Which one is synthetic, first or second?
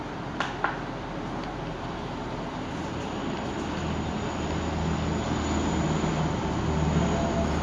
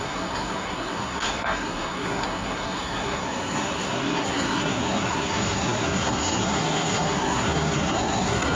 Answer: second